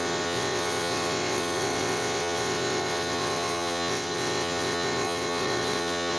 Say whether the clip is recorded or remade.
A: remade